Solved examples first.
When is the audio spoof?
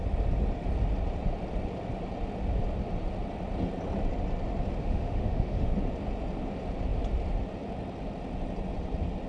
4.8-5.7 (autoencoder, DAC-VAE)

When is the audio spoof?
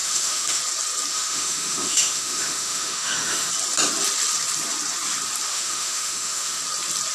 0.0-0.6 (autoencoder, DAC-VAE); 1.1-3.5; 5.5-6.6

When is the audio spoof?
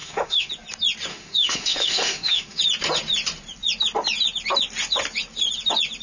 0.0-0.5 (autoencoder, DAC-VAE); 1.1-2.6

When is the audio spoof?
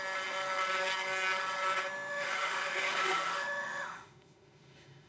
2.1-5.1 (autoencoder, DAC-VAE)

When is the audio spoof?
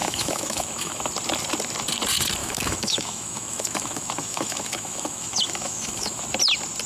0.0-1.0 (autoencoder, DAC-VAE); 2.4-6.2